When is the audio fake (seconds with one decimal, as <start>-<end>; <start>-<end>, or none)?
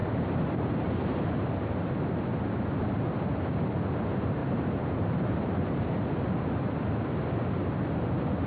0.0-1.9; 4.4-5.9